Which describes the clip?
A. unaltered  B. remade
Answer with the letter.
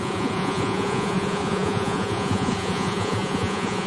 B